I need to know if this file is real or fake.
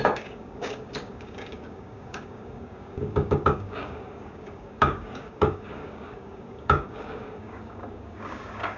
fake